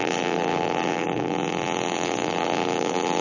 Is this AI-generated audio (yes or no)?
yes